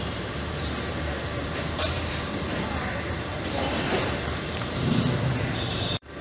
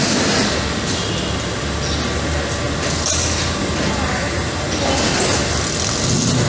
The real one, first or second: second